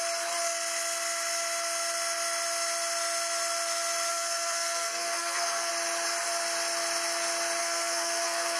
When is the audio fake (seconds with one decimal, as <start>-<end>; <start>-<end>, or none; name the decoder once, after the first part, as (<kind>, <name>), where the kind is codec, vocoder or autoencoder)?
4.1-5.7 (codec, SNAC); 7.6-8.6